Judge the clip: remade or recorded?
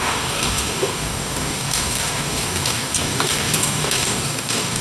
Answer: remade